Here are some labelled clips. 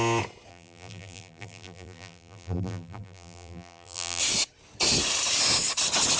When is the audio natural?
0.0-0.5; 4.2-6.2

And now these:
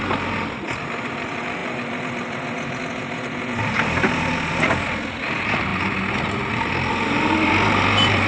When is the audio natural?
0.0-8.3

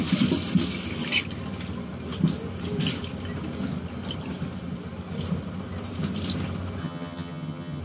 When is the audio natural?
0.0-6.8

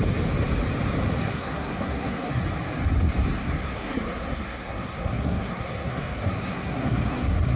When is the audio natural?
0.0-1.2; 2.4-3.4

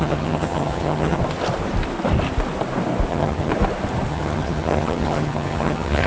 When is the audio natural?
1.2-3.1; 3.5-4.1

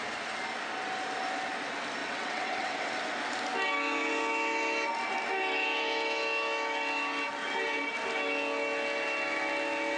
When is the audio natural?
0.0-2.0; 2.9-10.0

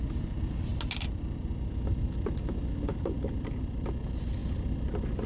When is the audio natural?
0.0-5.3